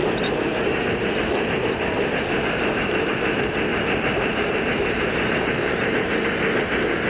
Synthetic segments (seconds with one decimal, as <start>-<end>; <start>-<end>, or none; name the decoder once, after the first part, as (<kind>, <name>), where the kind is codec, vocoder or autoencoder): 0.0-3.2 (vocoder, BigVGAN v2); 3.7-6.1